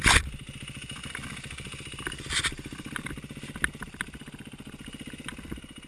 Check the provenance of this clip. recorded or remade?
recorded